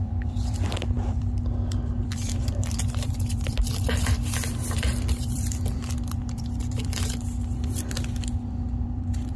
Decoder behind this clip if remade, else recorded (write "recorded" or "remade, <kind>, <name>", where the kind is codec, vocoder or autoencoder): remade, vocoder, BigVGAN v2